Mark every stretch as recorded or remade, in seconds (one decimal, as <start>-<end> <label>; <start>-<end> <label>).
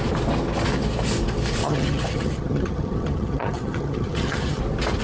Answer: 0.0-1.6 recorded; 1.6-4.6 remade; 4.6-5.0 recorded